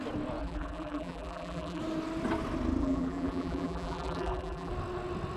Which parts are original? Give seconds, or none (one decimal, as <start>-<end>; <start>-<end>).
0.0-0.4; 1.8-2.8; 4.7-5.4